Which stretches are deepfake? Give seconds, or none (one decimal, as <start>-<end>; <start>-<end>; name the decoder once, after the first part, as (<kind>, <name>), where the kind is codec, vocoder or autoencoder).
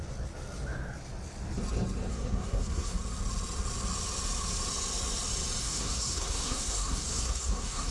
2.1-3.0 (codec, SNAC); 5.6-7.9